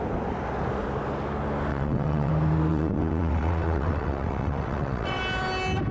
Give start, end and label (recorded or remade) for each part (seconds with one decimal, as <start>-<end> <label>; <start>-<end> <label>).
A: 0.0-1.7 recorded; 1.7-2.3 remade; 2.3-2.7 recorded; 2.7-5.2 remade; 5.2-5.9 recorded